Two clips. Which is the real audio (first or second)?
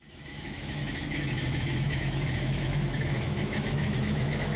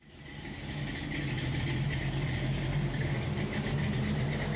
second